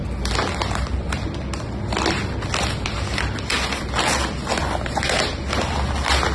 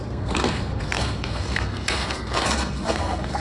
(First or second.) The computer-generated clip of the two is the second